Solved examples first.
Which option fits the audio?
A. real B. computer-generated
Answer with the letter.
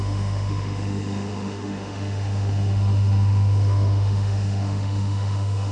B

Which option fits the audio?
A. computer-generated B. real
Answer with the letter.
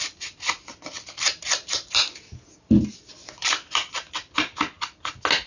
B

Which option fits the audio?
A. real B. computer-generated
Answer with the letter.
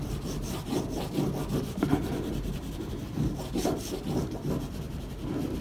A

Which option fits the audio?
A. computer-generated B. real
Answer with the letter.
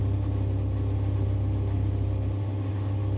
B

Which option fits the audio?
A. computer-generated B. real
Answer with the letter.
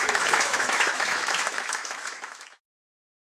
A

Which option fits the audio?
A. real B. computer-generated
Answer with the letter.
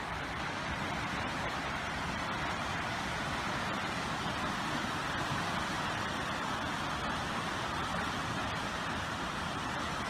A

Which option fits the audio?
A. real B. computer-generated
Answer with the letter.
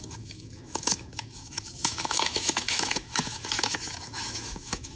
B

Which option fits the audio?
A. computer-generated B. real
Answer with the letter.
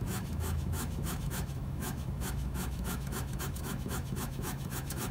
A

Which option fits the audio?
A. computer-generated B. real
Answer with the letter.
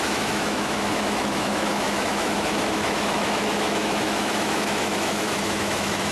A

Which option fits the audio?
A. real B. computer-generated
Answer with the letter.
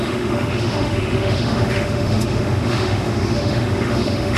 B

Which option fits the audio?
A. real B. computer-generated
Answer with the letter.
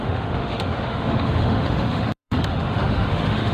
B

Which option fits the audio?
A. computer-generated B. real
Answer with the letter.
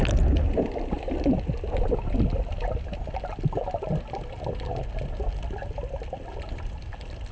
B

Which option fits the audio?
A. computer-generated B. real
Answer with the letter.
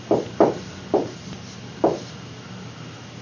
B